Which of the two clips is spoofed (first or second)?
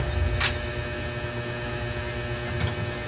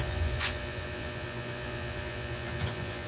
second